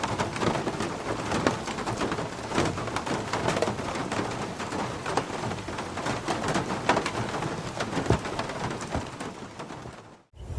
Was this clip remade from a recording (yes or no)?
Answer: no